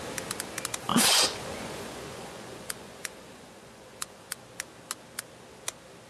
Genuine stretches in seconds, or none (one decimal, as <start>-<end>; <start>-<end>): 0.0-0.9; 4.4-6.1